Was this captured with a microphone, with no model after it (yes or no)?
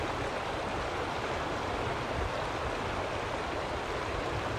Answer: yes